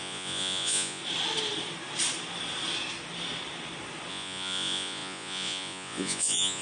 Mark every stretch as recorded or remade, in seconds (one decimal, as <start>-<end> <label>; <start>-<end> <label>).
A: 0.0-1.0 remade; 1.0-4.1 recorded; 4.1-6.6 remade